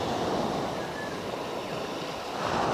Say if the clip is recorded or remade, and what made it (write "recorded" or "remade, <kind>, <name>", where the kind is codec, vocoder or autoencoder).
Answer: recorded